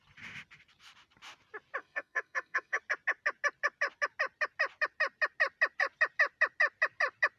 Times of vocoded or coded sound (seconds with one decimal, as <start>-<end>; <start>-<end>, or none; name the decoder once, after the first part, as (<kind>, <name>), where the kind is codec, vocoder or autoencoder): 1.8-2.8 (codec, SNAC)